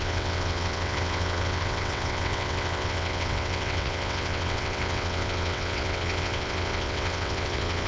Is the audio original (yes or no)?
no